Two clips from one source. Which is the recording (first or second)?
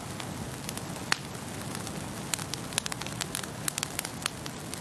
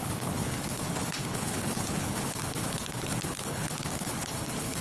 first